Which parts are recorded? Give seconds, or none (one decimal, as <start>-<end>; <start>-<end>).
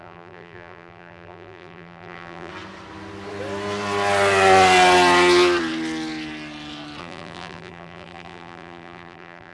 2.5-7.0